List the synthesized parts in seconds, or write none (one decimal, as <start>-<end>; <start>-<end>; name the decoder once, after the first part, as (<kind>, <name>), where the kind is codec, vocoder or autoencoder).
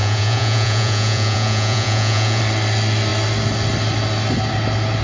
0.0-2.4 (vocoder, Vocos)